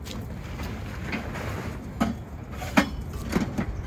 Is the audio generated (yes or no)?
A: no